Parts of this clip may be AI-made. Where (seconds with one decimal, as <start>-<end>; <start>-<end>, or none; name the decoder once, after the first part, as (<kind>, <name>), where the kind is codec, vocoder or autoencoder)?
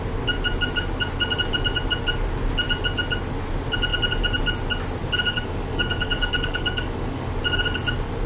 5.3-7.3 (codec, DAC)